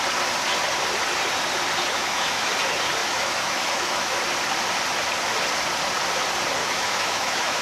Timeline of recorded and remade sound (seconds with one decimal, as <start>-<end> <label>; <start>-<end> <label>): 0.0-1.9 recorded; 1.9-2.5 remade; 2.5-3.0 recorded; 3.0-4.2 remade; 4.2-6.6 recorded; 6.6-7.6 remade